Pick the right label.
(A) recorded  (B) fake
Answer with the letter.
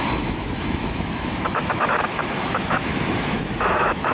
B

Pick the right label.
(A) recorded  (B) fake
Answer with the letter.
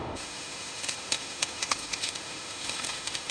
B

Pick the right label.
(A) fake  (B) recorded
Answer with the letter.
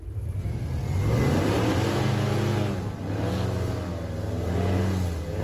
B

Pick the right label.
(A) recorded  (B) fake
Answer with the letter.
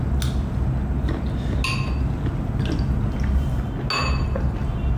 A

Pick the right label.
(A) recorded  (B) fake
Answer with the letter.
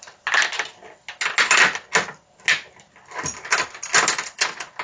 A